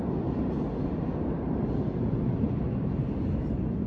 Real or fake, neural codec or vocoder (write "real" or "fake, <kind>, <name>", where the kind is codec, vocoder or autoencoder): real